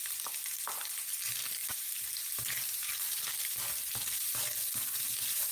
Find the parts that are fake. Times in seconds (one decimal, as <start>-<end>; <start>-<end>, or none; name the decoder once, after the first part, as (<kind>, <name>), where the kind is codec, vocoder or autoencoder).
1.6-3.2 (vocoder, BigVGAN v2)